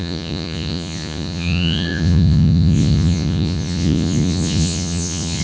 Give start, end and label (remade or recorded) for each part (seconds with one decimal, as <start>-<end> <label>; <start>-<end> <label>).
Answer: 0.0-5.4 remade